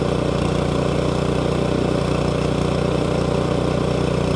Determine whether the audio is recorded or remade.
recorded